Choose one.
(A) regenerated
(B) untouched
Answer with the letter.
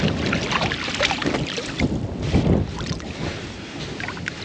B